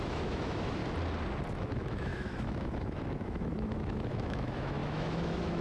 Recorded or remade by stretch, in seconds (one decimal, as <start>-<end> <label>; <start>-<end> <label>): 0.0-0.8 remade; 0.8-1.5 recorded; 1.5-5.6 remade